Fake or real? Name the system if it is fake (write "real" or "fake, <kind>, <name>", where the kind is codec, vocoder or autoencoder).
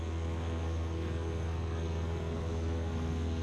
fake, codec, SNAC